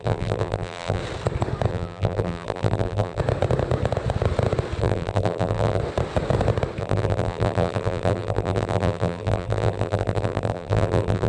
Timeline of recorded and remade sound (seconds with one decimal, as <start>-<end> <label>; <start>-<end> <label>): 0.0-1.0 remade; 1.0-1.7 recorded; 1.7-3.2 remade; 3.2-4.8 recorded; 4.8-5.8 remade; 5.8-6.8 recorded; 6.8-11.3 remade